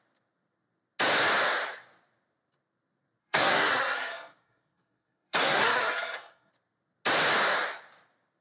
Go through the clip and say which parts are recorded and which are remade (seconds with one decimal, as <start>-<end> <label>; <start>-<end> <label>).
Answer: 0.0-3.2 recorded; 3.2-6.5 remade; 6.5-8.4 recorded